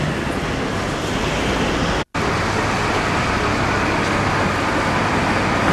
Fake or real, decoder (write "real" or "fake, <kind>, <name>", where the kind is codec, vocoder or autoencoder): real